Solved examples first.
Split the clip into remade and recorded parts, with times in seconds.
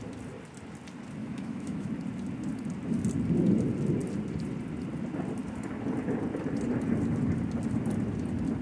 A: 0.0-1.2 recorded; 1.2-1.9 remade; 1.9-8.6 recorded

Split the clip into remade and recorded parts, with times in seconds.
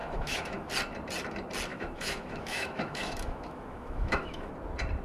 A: 0.0-0.7 remade; 0.7-1.7 recorded; 1.7-4.5 remade; 4.5-5.0 recorded